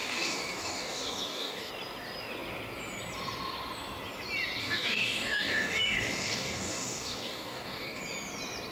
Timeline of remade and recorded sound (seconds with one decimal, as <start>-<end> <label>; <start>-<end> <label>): 0.0-1.7 remade; 1.7-4.6 recorded; 4.6-8.0 remade; 8.0-8.7 recorded